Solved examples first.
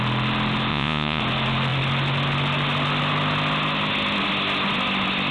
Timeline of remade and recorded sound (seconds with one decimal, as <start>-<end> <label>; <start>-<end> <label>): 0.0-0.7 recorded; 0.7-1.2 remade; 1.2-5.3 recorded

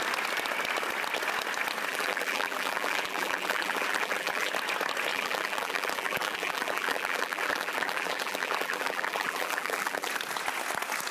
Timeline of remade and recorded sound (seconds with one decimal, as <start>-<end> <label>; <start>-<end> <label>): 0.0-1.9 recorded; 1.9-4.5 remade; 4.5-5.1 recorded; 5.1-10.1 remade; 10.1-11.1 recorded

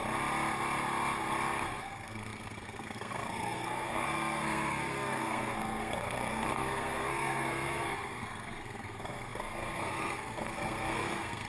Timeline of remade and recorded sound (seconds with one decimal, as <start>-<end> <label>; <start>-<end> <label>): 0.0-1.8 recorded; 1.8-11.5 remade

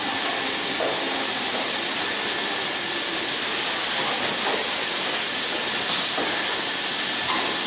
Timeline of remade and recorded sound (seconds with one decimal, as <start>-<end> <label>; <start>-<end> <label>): 0.0-7.7 recorded

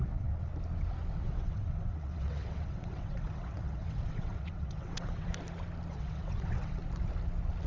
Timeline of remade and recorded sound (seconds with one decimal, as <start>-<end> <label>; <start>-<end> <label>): 0.0-0.5 remade; 0.5-1.2 recorded; 1.2-5.3 remade; 5.3-5.9 recorded; 5.9-6.8 remade; 6.8-7.7 recorded

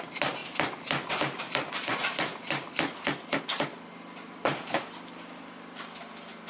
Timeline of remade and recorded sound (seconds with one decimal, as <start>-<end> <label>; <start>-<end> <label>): 0.0-6.5 recorded

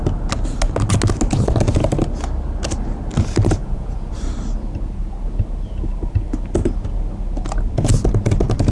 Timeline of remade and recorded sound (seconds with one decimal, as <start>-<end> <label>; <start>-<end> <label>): 0.0-3.6 recorded; 3.6-4.1 remade; 4.1-8.7 recorded

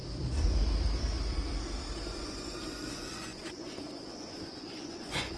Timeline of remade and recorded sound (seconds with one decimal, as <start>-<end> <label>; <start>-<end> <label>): 0.0-2.0 recorded; 2.0-5.4 remade